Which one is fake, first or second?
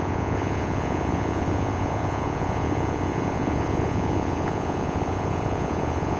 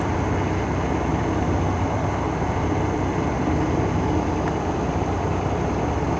first